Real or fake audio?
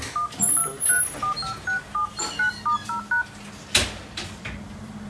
real